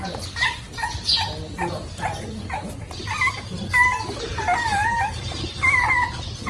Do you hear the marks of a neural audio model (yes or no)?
no